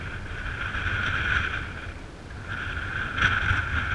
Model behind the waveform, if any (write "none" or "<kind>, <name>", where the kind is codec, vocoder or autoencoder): none